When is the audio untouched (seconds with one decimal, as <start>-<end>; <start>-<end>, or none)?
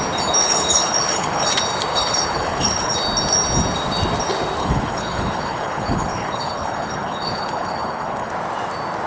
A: 0.0-0.4; 1.5-1.9; 2.9-4.6; 8.3-9.1